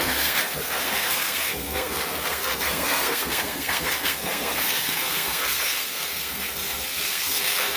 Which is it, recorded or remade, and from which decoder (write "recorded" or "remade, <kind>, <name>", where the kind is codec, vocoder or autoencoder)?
remade, codec, SNAC